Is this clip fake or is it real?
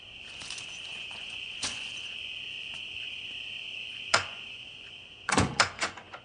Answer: fake